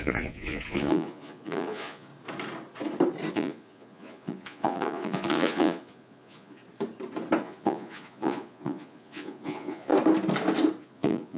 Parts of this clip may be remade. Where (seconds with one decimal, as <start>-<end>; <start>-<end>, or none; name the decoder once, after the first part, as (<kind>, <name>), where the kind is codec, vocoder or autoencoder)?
0.0-2.1 (vocoder, Vocos); 3.3-6.6; 7.4-9.9; 10.8-11.4